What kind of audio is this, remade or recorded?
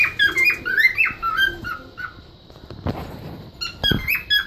recorded